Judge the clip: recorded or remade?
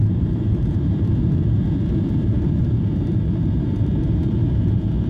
remade